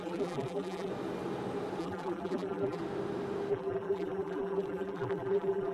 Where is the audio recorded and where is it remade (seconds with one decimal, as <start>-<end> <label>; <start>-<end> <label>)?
0.0-0.9 remade; 0.9-1.8 recorded; 1.8-2.8 remade; 2.8-3.5 recorded; 3.5-5.7 remade